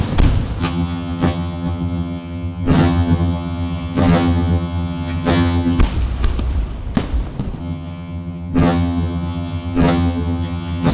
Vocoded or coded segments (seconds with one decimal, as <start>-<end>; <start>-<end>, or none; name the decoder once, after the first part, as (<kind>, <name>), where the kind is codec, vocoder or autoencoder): 0.6-5.8 (vocoder, HiFi-GAN); 7.6-10.9